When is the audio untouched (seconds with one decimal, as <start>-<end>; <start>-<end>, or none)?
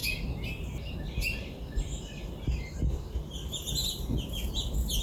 0.0-1.4; 4.4-5.0